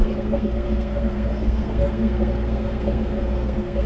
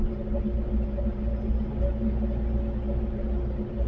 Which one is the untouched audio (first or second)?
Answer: second